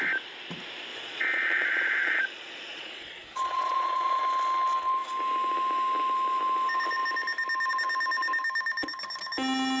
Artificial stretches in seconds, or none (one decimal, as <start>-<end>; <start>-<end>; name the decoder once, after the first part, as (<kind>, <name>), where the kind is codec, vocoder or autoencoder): 0.9-4.2 (vocoder, Vocos)